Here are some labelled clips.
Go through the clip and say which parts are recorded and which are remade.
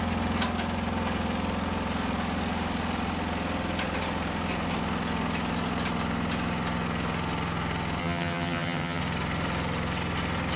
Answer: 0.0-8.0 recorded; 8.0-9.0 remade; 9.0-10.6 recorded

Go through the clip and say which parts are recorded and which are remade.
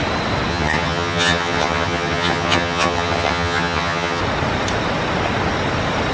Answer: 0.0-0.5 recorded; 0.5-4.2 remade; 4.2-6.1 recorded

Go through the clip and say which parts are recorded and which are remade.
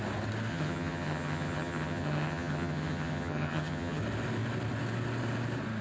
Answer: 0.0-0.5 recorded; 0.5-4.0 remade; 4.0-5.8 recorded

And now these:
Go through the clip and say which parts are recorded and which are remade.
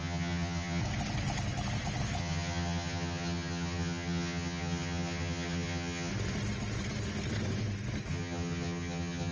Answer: 0.0-0.8 remade; 0.8-2.2 recorded; 2.2-6.1 remade; 6.1-8.1 recorded; 8.1-9.3 remade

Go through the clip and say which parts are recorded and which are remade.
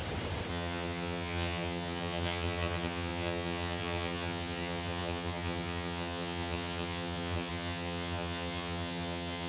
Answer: 0.0-0.5 recorded; 0.5-9.5 remade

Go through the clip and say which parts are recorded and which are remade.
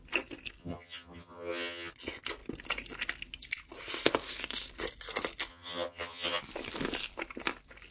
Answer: 0.0-0.6 recorded; 0.6-1.9 remade; 1.9-5.5 recorded; 5.5-6.4 remade; 6.4-7.9 recorded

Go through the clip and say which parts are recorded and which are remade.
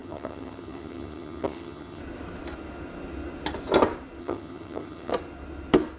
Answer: 0.0-2.0 remade; 2.0-4.2 recorded; 4.2-5.1 remade; 5.1-6.0 recorded